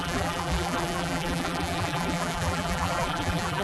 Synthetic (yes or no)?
yes